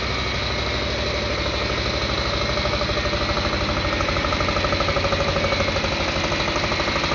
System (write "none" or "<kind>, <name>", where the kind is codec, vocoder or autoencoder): none